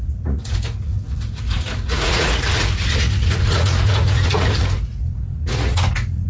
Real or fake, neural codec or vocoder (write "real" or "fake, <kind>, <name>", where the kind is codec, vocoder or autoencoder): fake, vocoder, Vocos